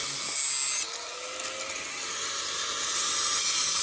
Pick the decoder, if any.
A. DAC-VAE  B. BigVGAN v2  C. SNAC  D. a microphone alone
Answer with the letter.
D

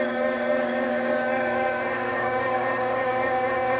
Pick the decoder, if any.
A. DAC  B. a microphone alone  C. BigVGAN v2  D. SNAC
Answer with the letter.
A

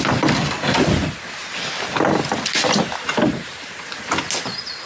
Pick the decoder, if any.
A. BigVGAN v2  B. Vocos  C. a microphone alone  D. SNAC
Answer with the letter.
C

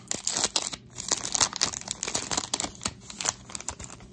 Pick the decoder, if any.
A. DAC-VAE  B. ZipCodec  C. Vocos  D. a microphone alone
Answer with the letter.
D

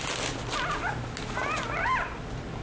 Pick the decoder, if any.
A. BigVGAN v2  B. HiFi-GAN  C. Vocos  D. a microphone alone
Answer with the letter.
D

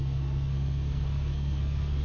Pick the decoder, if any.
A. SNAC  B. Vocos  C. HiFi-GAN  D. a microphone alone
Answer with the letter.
A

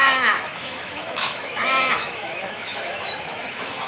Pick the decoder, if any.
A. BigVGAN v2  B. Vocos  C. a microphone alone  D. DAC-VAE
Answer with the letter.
D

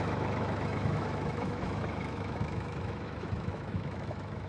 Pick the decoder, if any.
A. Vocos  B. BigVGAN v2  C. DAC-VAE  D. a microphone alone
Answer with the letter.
C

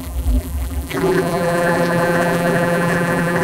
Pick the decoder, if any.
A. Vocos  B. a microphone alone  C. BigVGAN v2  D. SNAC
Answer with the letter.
C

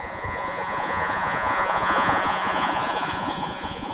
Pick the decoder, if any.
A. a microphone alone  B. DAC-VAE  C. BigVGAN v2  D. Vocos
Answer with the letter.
D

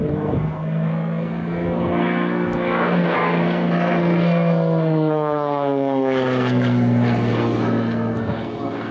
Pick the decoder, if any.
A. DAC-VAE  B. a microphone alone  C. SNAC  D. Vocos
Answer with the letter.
C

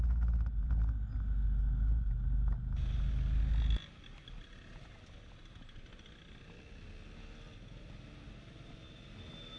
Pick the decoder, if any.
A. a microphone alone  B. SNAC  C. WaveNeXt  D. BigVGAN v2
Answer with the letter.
A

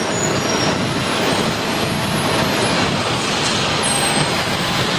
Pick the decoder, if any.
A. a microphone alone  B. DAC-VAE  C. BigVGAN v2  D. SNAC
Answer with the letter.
A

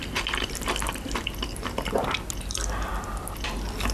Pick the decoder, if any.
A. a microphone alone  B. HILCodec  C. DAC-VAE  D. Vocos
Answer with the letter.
A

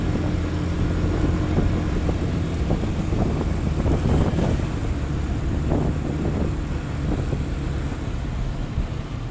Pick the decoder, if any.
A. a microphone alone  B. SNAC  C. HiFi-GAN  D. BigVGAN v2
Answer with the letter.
A